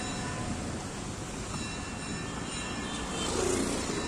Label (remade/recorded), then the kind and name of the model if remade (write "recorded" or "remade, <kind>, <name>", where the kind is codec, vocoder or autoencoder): recorded